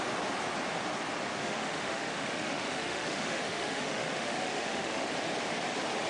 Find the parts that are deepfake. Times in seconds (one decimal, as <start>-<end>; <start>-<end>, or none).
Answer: 1.4-5.1